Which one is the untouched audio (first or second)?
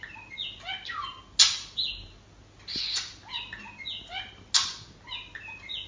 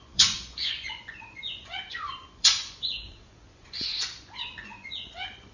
first